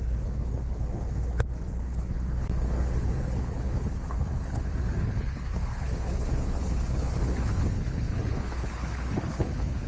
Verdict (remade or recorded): remade